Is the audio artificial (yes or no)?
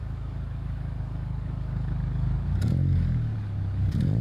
yes